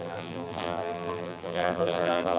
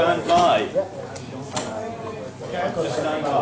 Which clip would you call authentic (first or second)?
second